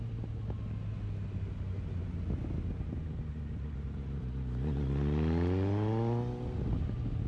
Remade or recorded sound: recorded